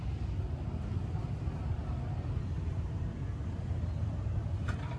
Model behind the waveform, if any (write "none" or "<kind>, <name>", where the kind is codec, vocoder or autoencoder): none